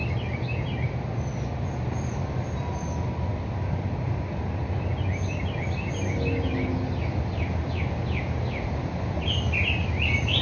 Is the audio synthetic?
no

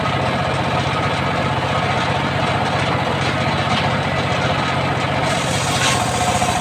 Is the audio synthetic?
no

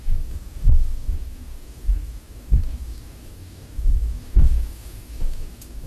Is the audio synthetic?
yes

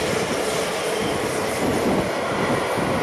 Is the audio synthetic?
no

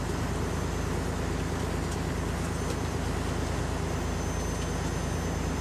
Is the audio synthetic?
no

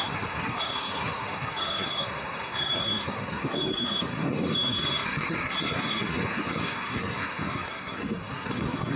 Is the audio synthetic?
yes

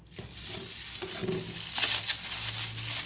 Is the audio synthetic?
no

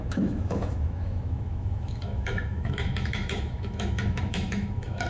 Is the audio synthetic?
yes